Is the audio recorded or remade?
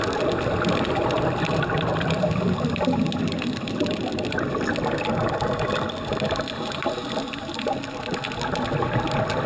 recorded